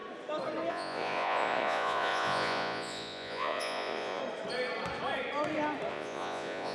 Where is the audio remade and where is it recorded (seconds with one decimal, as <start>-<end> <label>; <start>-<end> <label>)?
0.0-0.7 recorded; 0.7-4.2 remade; 4.2-5.9 recorded; 5.9-6.7 remade